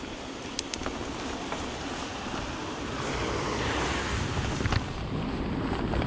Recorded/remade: recorded